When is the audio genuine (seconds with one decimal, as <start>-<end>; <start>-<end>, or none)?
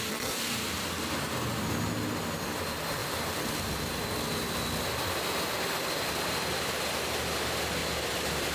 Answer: 0.0-3.0; 4.5-7.8